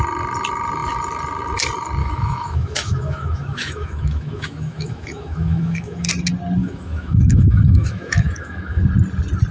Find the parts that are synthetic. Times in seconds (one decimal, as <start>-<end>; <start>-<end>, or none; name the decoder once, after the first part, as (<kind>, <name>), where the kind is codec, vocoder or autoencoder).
2.0-6.1 (autoencoder, DAC-VAE); 6.6-8.8